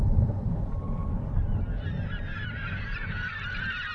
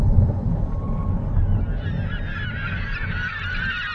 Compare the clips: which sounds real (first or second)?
second